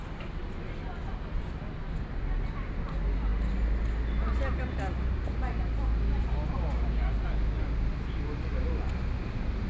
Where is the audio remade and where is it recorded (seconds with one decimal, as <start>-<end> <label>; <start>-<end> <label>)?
0.0-9.7 recorded